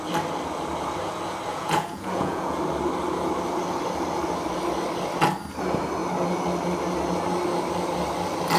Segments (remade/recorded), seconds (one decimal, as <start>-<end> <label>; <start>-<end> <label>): 0.0-1.5 recorded; 1.5-2.6 remade; 2.6-8.6 recorded